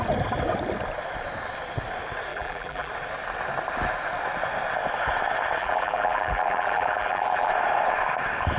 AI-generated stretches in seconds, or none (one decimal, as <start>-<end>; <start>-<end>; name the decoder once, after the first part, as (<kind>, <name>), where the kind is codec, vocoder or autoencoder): 2.3-2.9 (vocoder, BigVGAN v2); 5.6-7.5